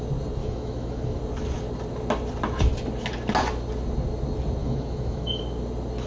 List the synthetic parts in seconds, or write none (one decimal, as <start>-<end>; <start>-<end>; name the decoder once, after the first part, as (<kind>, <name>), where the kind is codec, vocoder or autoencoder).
0.4-1.2 (autoencoder, DAC-VAE); 4.6-5.4